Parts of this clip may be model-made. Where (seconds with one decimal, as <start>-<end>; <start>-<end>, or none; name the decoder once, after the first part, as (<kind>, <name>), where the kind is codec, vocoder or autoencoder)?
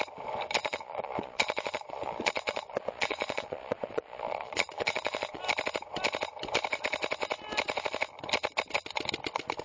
0.6-5.4 (vocoder, Vocos)